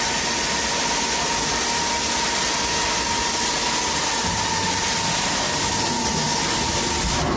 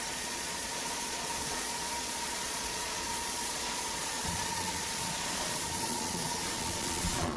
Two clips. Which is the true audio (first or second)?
first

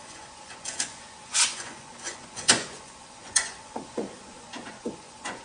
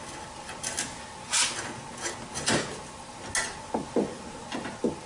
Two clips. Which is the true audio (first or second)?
second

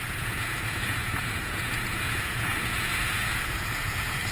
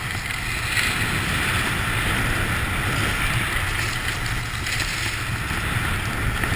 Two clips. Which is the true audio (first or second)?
second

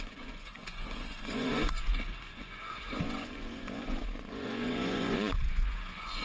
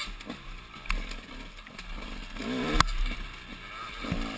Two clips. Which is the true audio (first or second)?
second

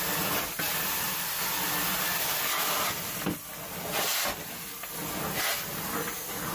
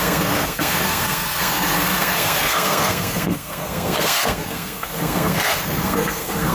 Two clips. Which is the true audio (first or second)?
first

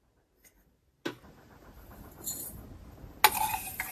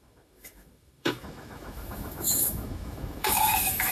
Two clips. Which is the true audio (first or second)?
first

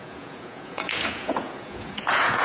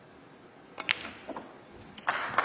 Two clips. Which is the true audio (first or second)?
second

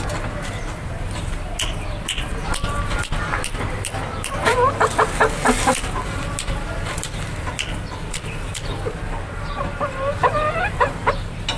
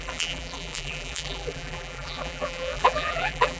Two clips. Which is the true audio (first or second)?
first